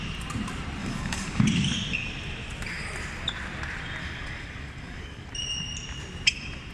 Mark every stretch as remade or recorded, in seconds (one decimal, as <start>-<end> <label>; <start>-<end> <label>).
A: 0.0-0.8 recorded; 0.8-1.4 remade; 1.4-4.0 recorded; 4.0-5.3 remade; 5.3-6.7 recorded